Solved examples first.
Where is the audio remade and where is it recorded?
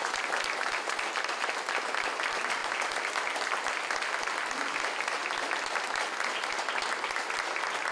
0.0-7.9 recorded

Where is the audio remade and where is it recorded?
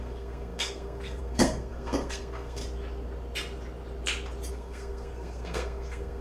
0.0-2.6 remade; 2.6-4.5 recorded; 4.5-6.2 remade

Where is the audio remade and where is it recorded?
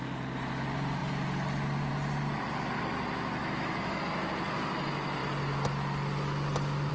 0.0-3.4 recorded; 3.4-4.0 remade; 4.0-6.9 recorded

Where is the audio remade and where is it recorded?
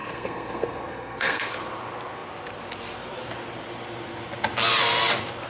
0.0-1.5 remade; 1.5-5.5 recorded